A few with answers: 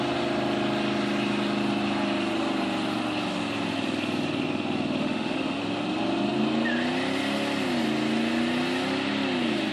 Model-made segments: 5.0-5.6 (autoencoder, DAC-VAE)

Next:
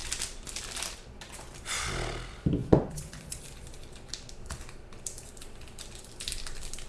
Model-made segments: 2.6-3.3 (vocoder, Vocos)